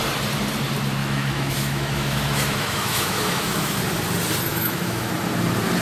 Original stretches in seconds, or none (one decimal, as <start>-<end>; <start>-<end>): 0.0-1.0; 3.8-4.5; 5.1-5.8